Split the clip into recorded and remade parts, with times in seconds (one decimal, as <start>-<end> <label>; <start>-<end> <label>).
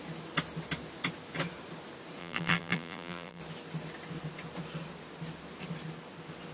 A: 0.0-2.2 recorded; 2.2-3.4 remade; 3.4-6.5 recorded